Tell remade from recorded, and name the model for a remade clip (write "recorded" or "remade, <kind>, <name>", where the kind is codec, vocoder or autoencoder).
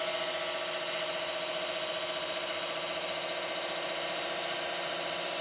recorded